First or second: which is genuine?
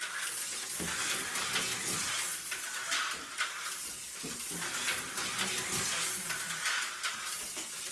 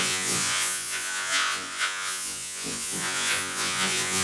first